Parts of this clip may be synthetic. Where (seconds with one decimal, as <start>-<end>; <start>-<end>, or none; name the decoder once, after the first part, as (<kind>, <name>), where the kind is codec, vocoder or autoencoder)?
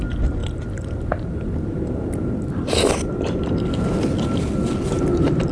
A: 0.4-2.3 (vocoder, BigVGAN v2)